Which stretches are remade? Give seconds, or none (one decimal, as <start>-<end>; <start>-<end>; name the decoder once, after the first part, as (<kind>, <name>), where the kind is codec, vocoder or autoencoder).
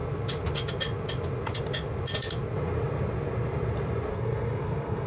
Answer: 4.1-5.1 (codec, SNAC)